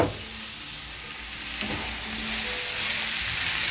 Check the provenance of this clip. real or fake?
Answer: real